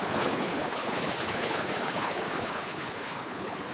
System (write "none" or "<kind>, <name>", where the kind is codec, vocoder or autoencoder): codec, HILCodec